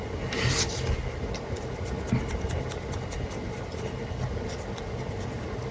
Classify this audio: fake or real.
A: real